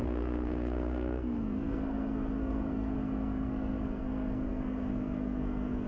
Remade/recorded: remade